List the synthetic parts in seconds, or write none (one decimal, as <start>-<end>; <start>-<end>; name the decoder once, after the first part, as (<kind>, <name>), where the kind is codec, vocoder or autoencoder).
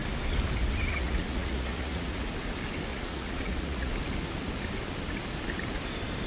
0.9-2.3 (vocoder, Vocos); 2.9-3.9